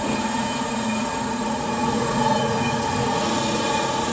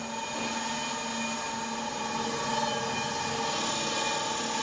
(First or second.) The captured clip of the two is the second